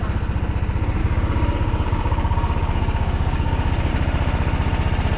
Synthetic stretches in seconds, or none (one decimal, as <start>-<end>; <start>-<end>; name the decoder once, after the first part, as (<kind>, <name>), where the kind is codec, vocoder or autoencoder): 1.0-3.9 (codec, DAC)